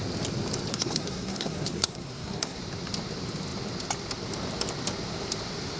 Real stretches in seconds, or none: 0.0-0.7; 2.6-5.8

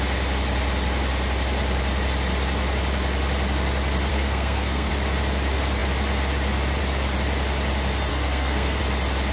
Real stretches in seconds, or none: 0.0-4.1; 4.9-8.1; 8.8-9.3

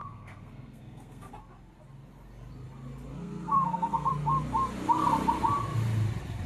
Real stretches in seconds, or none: 1.3-3.1; 4.1-6.5

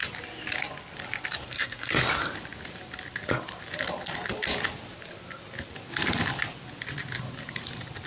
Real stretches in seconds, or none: 0.0-1.4; 1.9-8.1

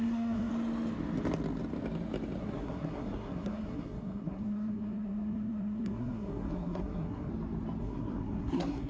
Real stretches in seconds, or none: 0.5-2.4; 7.3-7.8